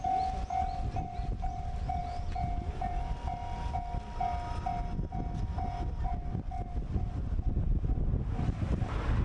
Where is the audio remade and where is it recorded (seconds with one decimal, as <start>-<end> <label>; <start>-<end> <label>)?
0.0-9.2 recorded